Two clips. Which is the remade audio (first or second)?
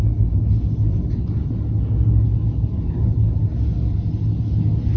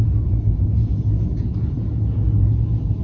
second